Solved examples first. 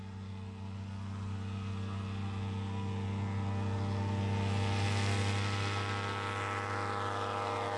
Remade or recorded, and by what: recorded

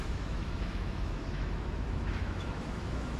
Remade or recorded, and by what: remade, autoencoder, DAC-VAE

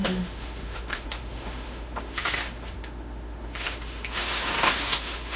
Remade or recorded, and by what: remade, autoencoder, DAC-VAE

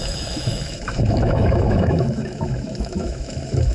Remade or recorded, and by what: remade, autoencoder, DAC-VAE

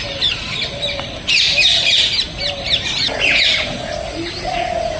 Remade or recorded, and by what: recorded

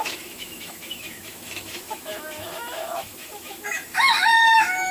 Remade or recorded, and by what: remade, autoencoder, DAC-VAE